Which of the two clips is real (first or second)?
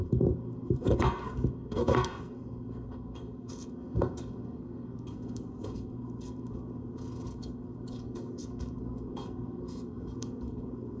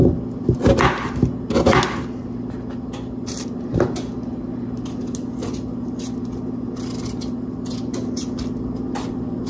second